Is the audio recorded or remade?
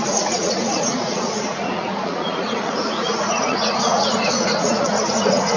remade